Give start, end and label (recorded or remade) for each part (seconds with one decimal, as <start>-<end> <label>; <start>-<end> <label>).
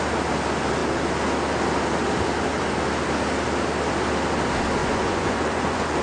0.0-4.8 recorded; 4.8-6.0 remade